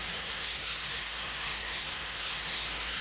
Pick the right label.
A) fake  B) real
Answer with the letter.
A